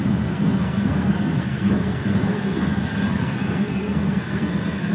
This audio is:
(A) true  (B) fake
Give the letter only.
B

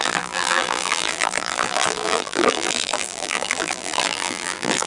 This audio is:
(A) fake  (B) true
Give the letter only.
A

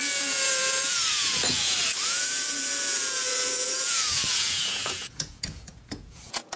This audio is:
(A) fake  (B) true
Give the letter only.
A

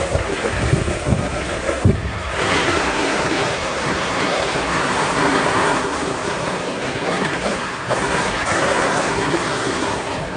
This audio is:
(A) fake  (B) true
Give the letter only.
A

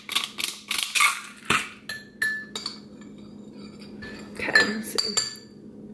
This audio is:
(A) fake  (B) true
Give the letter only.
B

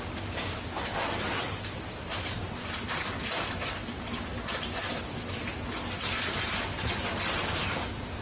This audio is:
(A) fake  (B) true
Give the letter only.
B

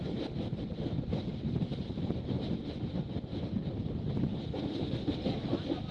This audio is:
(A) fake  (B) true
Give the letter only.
B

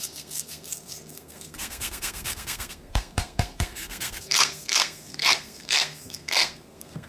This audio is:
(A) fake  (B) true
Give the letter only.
A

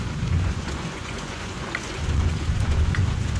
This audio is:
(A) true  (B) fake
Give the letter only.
B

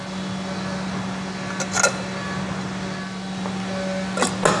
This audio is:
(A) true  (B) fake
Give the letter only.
A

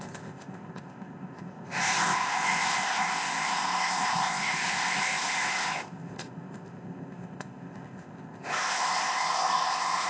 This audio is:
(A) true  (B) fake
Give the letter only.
B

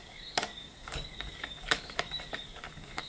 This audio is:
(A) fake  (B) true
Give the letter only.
A